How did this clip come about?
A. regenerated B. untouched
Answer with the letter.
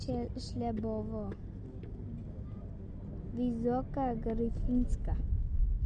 B